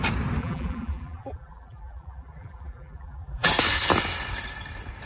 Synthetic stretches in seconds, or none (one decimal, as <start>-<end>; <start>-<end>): 0.4-3.5